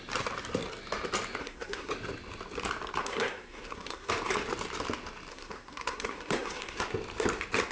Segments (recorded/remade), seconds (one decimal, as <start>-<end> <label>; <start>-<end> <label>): 0.0-1.4 recorded; 1.4-1.9 remade; 1.9-3.0 recorded; 3.0-4.1 remade; 4.1-5.3 recorded; 5.3-6.8 remade; 6.8-7.7 recorded